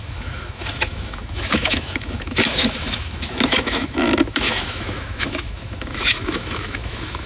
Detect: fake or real fake